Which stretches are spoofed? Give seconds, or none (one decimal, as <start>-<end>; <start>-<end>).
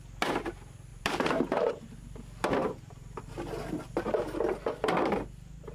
0.9-1.7; 2.6-3.3